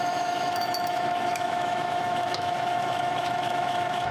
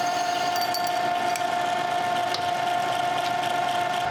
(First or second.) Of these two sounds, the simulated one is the first